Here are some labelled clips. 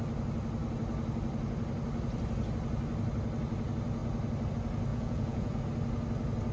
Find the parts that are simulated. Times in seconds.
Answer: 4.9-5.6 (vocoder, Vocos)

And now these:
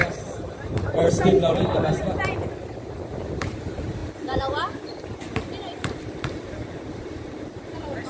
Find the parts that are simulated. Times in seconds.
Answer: 0.0-2.0 (vocoder, BigVGAN v2); 2.7-8.1

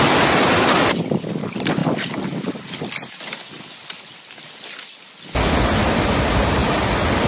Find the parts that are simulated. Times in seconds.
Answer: none